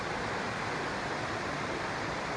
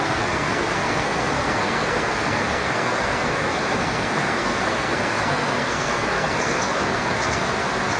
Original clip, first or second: first